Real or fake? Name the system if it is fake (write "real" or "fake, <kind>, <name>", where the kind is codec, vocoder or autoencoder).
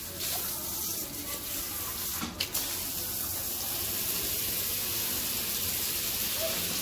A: real